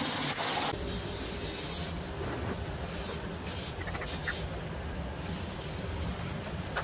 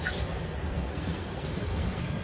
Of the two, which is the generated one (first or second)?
second